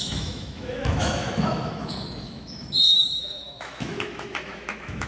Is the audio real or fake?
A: fake